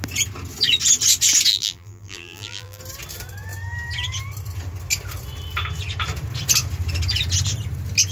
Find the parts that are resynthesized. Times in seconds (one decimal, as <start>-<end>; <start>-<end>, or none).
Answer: 1.5-2.8